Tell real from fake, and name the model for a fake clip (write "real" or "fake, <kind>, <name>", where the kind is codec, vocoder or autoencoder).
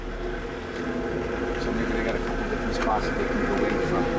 real